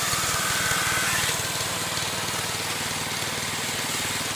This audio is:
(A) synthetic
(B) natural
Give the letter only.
B